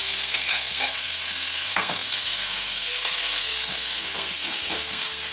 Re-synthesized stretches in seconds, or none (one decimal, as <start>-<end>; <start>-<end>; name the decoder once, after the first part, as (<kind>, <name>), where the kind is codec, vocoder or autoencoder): 0.0-5.3 (codec, SNAC)